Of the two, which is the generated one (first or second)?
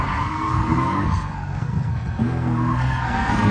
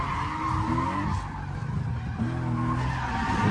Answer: first